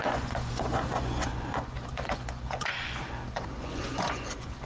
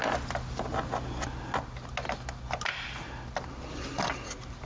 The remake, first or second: first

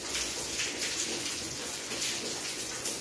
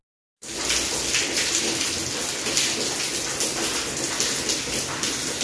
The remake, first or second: first